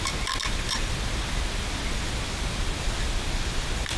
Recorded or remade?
recorded